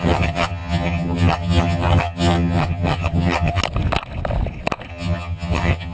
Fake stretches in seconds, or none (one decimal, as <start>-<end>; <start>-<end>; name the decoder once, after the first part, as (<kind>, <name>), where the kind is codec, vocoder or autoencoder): 0.0-3.6 (vocoder, HiFi-GAN); 4.9-5.9